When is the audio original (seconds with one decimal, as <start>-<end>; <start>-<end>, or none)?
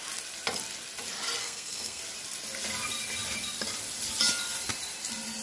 0.0-1.4; 2.0-5.4